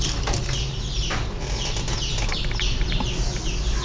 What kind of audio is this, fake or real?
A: real